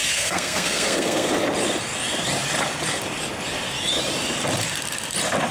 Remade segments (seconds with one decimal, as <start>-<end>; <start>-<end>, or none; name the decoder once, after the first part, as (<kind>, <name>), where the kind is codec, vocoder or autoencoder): 0.0-1.3 (codec, SNAC)